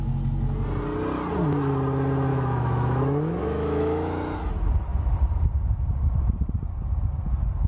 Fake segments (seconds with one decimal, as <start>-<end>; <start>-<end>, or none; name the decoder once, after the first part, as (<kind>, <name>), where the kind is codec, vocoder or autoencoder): 2.3-4.5 (autoencoder, DAC-VAE)

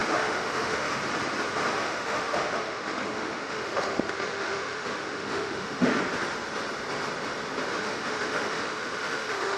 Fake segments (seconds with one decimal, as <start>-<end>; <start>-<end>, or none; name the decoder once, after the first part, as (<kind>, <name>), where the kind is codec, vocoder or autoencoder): 0.0-1.0 (autoencoder, DAC-VAE); 1.8-6.0; 7.7-9.6

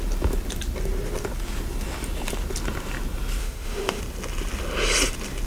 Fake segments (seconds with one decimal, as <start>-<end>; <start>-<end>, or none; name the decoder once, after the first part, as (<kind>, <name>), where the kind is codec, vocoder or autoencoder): 3.4-4.0 (autoencoder, DAC-VAE)

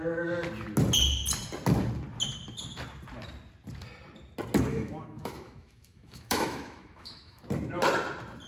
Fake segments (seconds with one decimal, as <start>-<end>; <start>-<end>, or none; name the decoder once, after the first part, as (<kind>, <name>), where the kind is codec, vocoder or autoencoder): 4.7-7.4 (autoencoder, DAC-VAE)

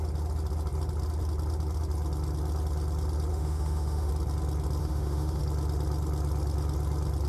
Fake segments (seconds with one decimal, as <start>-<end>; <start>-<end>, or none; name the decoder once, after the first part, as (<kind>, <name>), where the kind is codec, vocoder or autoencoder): 3.3-4.1 (autoencoder, DAC-VAE); 4.8-5.4

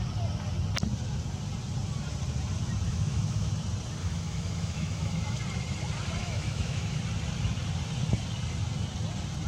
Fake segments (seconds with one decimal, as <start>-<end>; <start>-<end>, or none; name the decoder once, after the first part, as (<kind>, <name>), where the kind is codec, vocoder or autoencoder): 2.9-3.5 (autoencoder, DAC-VAE); 4.0-5.4; 6.2-7.0